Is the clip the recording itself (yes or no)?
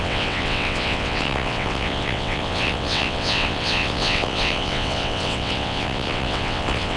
no